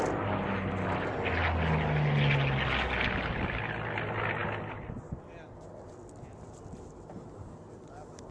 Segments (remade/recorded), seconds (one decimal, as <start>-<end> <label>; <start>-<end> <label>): 0.0-8.3 recorded